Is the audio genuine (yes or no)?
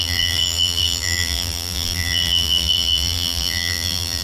no